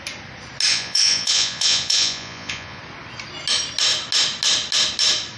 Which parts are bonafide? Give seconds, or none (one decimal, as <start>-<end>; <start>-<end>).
0.0-0.7; 2.8-5.4